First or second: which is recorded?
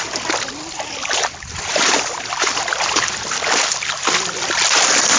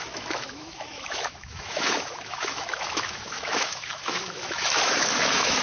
first